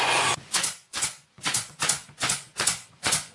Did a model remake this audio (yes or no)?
yes